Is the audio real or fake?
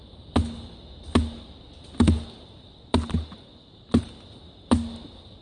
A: real